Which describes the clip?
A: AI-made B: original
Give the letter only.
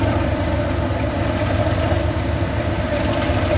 B